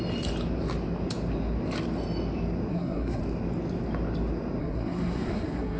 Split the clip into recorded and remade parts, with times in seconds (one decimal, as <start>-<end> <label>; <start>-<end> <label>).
0.0-2.7 recorded; 2.7-3.2 remade; 3.2-4.6 recorded; 4.6-5.8 remade

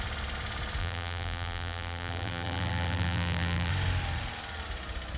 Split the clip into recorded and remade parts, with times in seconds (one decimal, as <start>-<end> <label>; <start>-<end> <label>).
0.0-0.8 recorded; 0.8-3.7 remade; 3.7-5.2 recorded

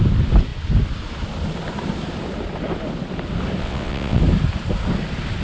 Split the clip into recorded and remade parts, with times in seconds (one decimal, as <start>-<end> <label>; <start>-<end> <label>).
0.0-3.6 recorded; 3.6-4.2 remade; 4.2-5.4 recorded

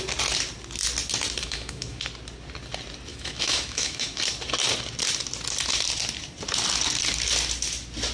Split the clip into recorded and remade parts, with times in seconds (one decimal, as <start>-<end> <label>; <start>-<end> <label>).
0.0-1.4 recorded; 1.4-2.0 remade; 2.0-3.1 recorded; 3.1-4.2 remade; 4.2-8.1 recorded

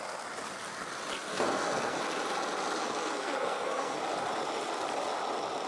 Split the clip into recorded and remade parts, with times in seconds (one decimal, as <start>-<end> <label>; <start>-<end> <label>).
0.0-1.3 recorded; 1.3-2.0 remade; 2.0-2.8 recorded; 2.8-4.0 remade; 4.0-5.7 recorded

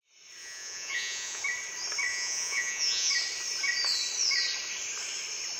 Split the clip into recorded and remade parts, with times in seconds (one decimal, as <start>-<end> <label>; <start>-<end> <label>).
0.0-0.4 recorded; 0.4-1.4 remade; 1.4-2.1 recorded; 2.1-3.1 remade; 3.1-5.6 recorded